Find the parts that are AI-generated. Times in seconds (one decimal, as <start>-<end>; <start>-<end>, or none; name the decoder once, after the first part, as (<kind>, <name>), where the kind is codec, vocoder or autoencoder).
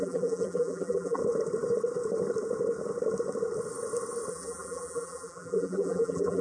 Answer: 0.0-1.2 (vocoder, BigVGAN v2); 4.3-6.4